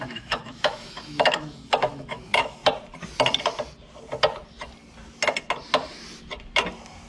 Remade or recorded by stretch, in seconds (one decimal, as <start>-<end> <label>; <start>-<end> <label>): 0.0-2.6 remade; 2.6-7.1 recorded